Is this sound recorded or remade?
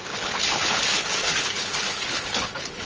remade